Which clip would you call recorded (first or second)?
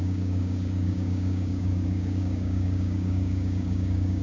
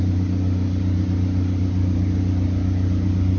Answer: second